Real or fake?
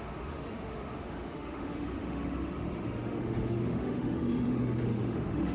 fake